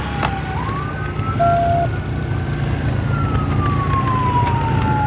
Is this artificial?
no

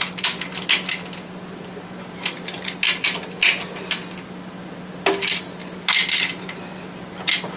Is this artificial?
no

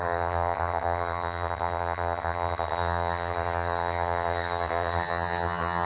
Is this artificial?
yes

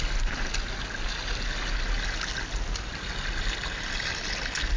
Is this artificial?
no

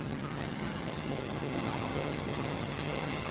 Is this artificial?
yes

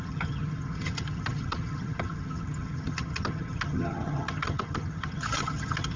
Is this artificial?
yes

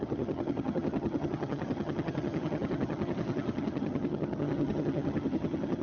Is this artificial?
yes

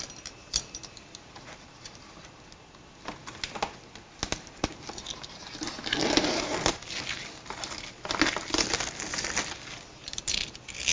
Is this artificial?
no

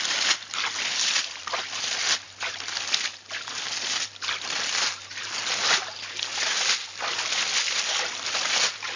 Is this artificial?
no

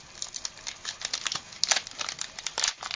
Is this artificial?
no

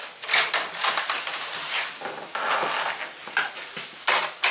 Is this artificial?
no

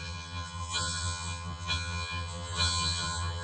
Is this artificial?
yes